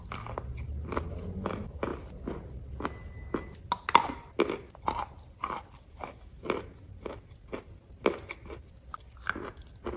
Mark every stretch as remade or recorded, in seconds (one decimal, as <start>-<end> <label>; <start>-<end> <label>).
0.0-10.0 recorded